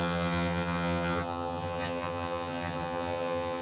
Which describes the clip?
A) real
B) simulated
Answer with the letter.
B